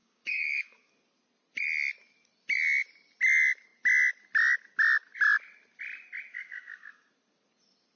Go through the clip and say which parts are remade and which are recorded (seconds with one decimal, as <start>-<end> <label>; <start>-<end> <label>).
0.0-0.9 remade; 0.9-6.3 recorded; 6.3-7.1 remade; 7.1-8.0 recorded